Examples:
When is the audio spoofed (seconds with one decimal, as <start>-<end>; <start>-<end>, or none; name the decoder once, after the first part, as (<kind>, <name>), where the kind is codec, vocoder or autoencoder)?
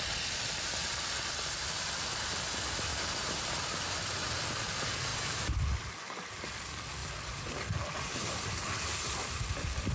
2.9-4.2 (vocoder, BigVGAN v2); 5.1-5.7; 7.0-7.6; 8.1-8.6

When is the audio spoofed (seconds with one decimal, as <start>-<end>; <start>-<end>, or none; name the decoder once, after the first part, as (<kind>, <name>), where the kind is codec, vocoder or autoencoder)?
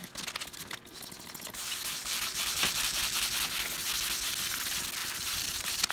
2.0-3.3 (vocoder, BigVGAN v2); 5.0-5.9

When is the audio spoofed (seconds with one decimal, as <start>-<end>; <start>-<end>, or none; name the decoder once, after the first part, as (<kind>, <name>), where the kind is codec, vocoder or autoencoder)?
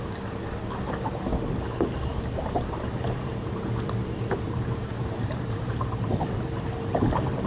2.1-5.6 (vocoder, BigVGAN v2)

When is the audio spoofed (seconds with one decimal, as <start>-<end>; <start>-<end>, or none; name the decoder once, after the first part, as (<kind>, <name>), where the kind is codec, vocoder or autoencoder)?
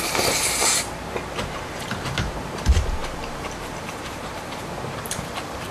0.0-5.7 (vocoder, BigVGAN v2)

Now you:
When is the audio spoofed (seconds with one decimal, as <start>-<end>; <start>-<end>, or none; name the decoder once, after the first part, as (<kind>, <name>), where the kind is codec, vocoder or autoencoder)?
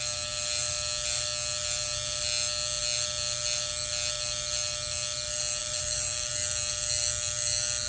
5.6-6.3 (vocoder, BigVGAN v2)